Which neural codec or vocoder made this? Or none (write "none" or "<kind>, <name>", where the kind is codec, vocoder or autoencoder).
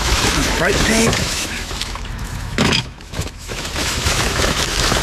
autoencoder, DAC-VAE